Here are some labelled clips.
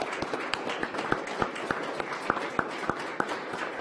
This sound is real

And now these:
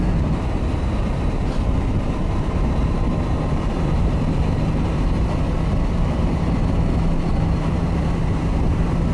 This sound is fake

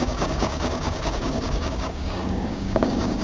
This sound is fake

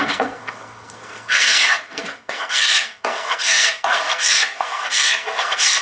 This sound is fake